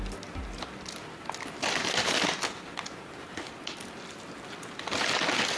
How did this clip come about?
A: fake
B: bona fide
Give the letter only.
B